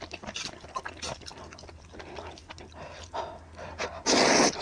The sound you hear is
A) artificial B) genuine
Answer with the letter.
B